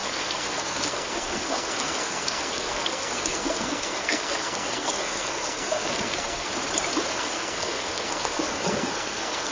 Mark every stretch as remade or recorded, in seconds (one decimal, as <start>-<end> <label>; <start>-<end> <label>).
0.0-6.5 remade; 6.5-7.1 recorded; 7.1-9.5 remade